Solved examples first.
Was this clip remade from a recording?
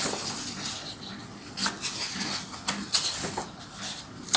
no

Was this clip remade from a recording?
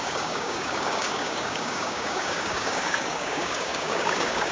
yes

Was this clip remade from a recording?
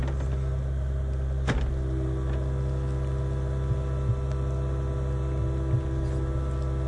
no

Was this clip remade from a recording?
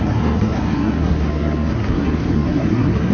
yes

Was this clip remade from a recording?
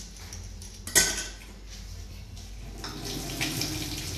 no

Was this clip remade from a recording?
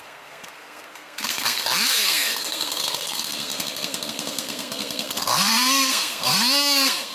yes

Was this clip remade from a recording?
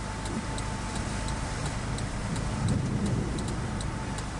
yes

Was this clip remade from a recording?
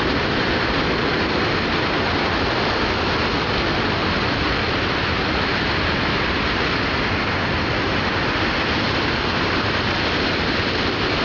yes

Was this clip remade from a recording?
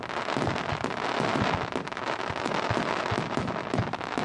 no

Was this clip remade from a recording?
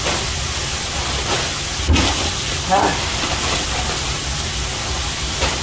no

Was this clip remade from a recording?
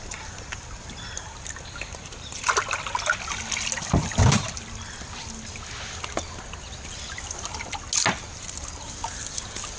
no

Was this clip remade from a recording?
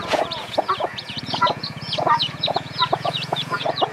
yes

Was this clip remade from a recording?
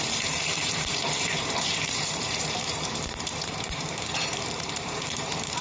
yes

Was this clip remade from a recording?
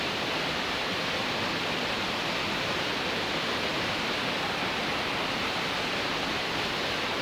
no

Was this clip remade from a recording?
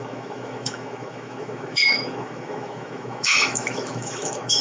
yes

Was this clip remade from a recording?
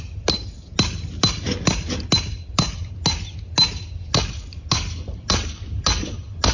no